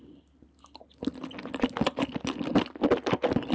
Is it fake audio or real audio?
real